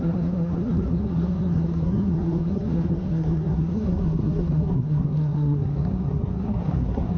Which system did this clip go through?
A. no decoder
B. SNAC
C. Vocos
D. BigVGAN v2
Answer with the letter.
B